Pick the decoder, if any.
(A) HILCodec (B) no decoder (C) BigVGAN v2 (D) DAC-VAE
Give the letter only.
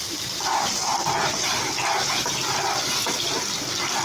B